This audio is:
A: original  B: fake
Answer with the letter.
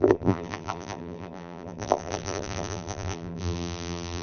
B